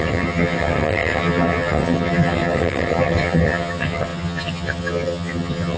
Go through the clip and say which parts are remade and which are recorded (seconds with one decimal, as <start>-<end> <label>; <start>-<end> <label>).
0.0-5.8 remade